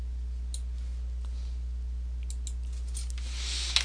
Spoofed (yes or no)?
no